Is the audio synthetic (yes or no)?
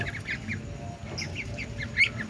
no